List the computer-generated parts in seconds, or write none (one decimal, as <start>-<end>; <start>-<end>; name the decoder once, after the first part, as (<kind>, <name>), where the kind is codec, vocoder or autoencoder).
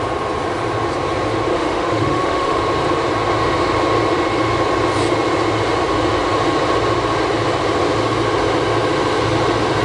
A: 1.5-2.6 (autoencoder, DAC-VAE)